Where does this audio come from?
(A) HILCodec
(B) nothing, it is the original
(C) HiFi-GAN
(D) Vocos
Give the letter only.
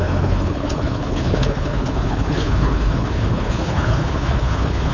A